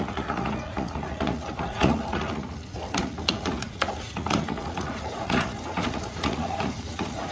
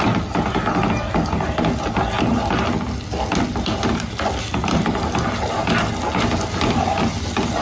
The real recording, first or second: second